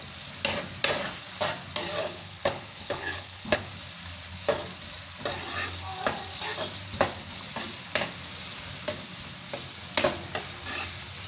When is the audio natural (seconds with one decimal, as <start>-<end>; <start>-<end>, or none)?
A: 0.0-2.0; 3.6-11.3